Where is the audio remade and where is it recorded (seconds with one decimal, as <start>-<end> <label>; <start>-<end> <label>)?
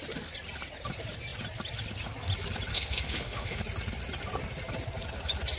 0.0-2.7 recorded; 2.7-3.6 remade; 3.6-5.6 recorded